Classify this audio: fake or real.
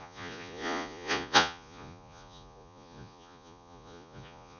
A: fake